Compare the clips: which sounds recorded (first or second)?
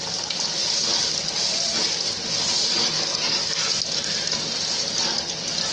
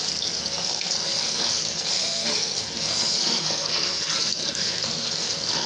first